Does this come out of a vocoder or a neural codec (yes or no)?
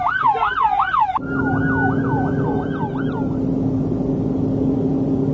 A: no